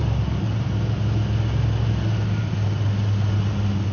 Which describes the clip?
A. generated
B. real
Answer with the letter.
B